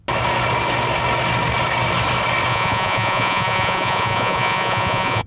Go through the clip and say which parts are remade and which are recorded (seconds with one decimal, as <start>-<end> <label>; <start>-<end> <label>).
0.0-2.5 recorded; 2.5-5.3 remade